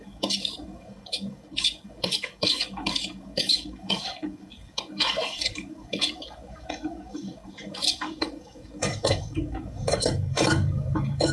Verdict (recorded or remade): remade